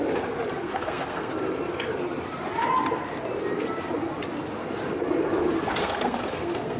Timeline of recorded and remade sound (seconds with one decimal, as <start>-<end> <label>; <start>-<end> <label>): 0.0-0.6 recorded; 0.6-1.3 remade; 1.3-5.8 recorded; 5.8-6.8 remade